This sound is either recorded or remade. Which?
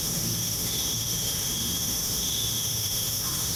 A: remade